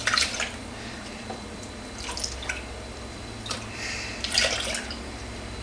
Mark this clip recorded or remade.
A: remade